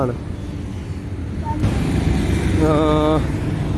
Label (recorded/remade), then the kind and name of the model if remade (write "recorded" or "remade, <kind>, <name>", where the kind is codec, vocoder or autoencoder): recorded